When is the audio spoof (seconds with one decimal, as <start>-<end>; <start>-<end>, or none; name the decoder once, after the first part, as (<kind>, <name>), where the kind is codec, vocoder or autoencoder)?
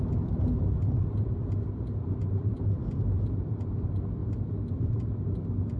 0.0-4.2 (vocoder, BigVGAN v2); 4.7-5.8